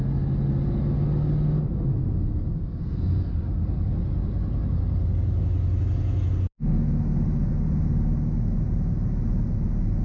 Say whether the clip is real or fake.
real